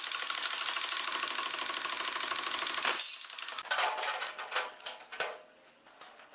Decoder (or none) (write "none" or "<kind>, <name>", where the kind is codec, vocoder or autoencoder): none